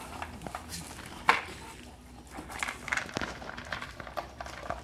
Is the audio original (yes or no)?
yes